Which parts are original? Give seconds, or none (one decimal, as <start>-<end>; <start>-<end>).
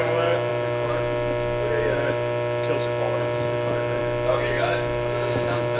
0.0-5.8